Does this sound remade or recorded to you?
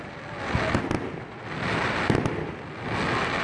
recorded